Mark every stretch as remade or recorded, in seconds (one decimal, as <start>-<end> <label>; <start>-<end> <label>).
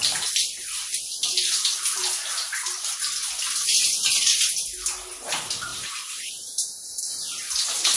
0.0-0.8 remade; 0.8-2.2 recorded; 2.2-2.8 remade; 2.8-5.7 recorded; 5.7-7.0 remade; 7.0-8.0 recorded